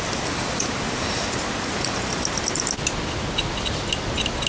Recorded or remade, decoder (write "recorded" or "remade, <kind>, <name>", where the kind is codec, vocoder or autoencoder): recorded